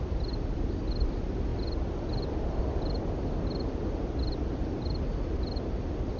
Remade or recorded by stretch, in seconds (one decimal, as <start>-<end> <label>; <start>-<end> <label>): 0.0-6.2 recorded

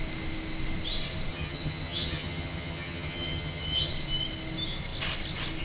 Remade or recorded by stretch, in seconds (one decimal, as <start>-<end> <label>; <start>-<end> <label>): 0.0-1.3 recorded; 1.3-3.9 remade; 3.9-5.6 recorded